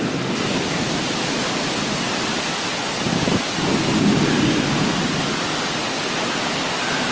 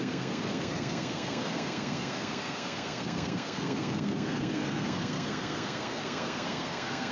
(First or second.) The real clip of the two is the first